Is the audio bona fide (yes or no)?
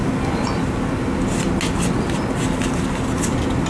yes